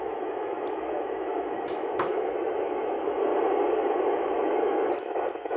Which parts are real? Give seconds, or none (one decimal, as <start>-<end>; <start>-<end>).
3.3-4.1